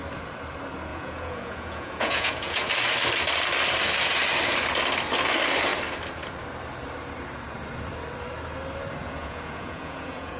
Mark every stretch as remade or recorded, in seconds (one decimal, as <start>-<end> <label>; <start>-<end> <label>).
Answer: 0.0-0.9 recorded; 0.9-2.7 remade; 2.7-9.0 recorded; 9.0-10.4 remade